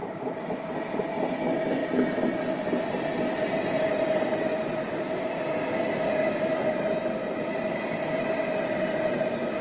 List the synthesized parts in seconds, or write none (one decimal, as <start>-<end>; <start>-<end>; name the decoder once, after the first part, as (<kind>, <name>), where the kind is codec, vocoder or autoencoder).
none